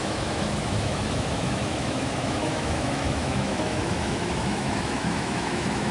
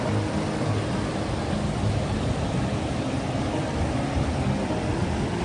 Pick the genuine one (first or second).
second